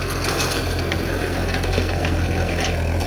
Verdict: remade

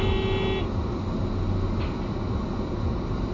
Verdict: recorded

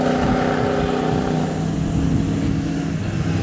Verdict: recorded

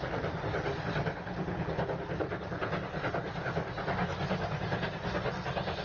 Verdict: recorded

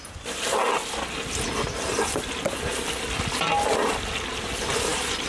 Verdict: recorded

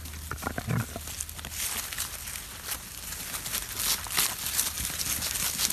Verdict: recorded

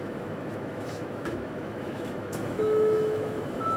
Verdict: remade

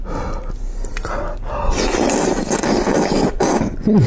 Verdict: recorded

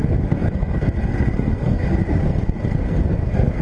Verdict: remade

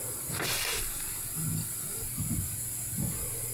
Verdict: recorded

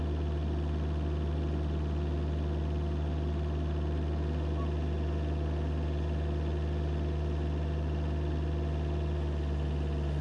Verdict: recorded